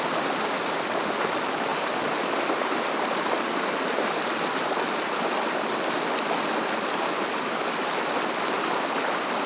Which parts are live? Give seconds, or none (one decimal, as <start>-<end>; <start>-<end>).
0.0-9.5